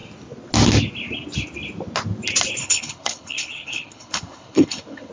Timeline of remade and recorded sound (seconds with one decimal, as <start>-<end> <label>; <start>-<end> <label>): 0.0-2.6 recorded; 2.6-5.1 remade